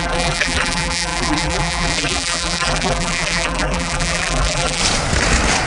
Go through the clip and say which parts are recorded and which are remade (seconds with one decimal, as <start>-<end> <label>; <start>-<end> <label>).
0.0-4.8 remade; 4.8-5.7 recorded